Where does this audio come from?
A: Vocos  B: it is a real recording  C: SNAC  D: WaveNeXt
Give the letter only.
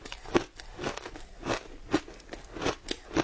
B